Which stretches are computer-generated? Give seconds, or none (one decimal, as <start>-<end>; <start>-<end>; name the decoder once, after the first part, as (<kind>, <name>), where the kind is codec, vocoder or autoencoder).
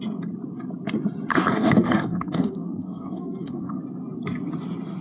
1.3-3.8 (codec, SNAC)